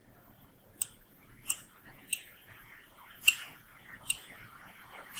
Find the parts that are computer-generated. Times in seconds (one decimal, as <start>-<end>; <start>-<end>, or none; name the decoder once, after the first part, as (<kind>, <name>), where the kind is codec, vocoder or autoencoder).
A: 0.9-5.2 (vocoder, Vocos)